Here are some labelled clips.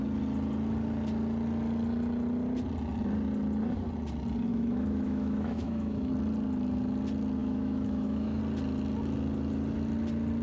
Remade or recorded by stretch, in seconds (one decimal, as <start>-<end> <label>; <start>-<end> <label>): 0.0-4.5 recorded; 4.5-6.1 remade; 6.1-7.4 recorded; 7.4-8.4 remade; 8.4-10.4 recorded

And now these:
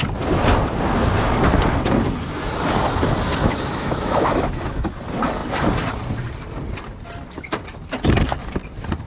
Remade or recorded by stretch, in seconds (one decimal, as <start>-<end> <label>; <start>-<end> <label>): 0.0-3.4 recorded; 3.4-4.9 remade; 4.9-9.1 recorded

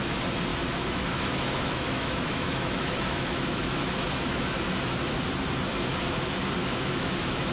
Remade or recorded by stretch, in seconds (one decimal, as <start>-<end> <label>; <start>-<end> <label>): 0.0-0.5 recorded; 0.5-4.5 remade; 4.5-6.6 recorded; 6.6-7.5 remade

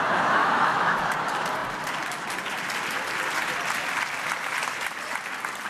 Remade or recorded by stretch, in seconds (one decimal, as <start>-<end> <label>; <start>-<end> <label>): 0.0-0.4 recorded; 0.4-1.0 remade; 1.0-5.7 recorded

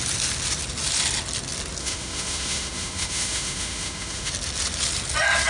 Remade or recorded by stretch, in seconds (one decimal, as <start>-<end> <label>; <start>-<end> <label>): 0.0-1.8 recorded; 1.8-4.3 remade; 4.3-5.5 recorded

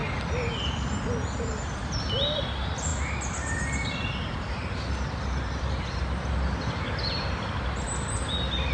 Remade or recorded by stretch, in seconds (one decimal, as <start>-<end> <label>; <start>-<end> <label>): 0.0-8.7 recorded

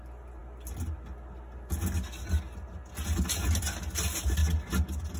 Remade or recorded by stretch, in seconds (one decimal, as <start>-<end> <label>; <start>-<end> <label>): 0.0-5.2 recorded